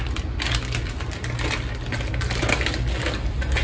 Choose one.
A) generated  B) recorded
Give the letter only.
B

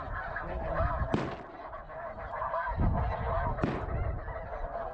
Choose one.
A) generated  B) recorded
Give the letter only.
B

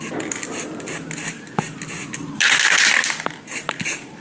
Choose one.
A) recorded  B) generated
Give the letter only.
A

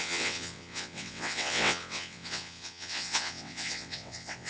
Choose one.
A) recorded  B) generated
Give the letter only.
B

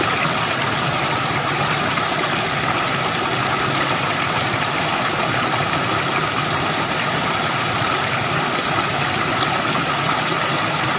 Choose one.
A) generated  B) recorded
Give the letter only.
B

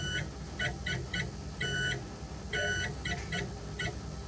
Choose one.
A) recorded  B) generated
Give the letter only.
A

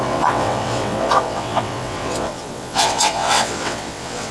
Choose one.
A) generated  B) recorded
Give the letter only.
A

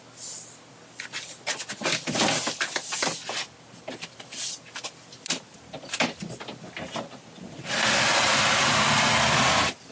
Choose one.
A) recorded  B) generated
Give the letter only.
A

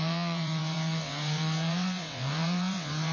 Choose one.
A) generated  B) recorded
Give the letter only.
A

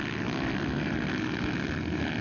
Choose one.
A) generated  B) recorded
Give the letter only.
B